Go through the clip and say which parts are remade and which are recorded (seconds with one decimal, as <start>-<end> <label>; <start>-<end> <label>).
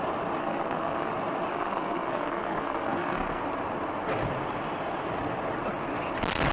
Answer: 0.0-0.4 recorded; 0.4-1.1 remade; 1.1-1.5 recorded; 1.5-3.4 remade; 3.4-6.5 recorded